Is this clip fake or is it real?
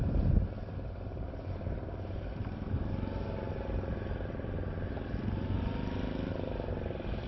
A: real